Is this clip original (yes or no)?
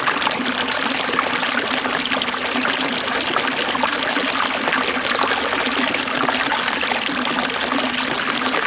yes